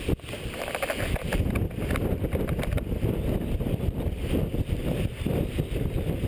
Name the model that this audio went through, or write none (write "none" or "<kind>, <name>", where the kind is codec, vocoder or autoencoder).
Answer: vocoder, BigVGAN v2